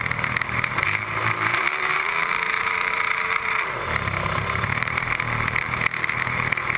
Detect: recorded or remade remade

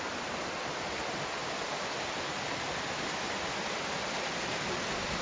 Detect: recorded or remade recorded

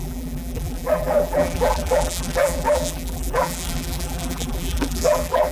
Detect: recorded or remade remade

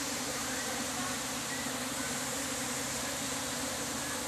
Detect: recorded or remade remade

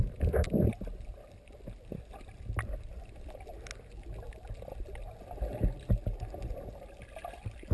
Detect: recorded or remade recorded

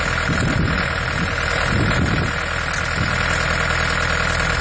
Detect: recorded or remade recorded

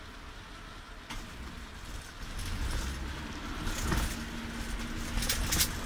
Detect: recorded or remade recorded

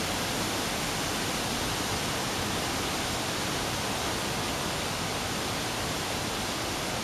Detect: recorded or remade recorded